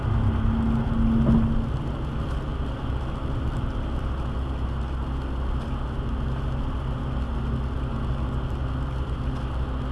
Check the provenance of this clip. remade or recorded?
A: recorded